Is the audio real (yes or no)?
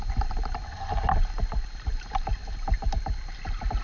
yes